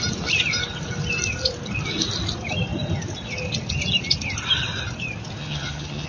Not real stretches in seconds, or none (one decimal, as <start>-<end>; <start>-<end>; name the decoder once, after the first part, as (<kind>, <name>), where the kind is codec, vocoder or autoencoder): 5.4-6.1 (vocoder, HiFi-GAN)